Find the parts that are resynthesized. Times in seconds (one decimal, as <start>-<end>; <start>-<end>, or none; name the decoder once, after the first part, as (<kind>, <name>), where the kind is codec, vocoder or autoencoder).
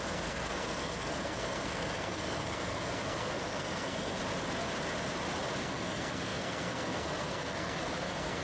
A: 0.0-4.2 (codec, SNAC); 5.6-8.4